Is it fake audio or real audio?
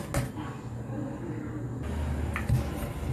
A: real